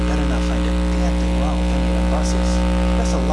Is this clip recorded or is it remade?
recorded